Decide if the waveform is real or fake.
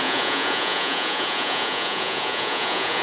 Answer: fake